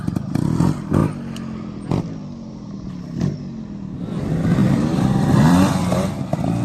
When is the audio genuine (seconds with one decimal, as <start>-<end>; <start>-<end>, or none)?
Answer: 0.0-4.6; 6.1-6.6